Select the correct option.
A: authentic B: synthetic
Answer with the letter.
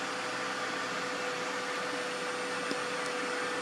A